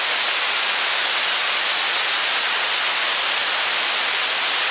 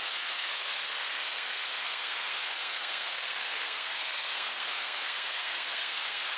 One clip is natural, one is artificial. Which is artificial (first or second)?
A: second